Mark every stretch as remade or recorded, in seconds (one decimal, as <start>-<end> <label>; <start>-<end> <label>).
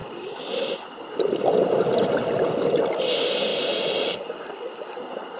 0.0-3.5 recorded; 3.5-4.3 remade; 4.3-5.4 recorded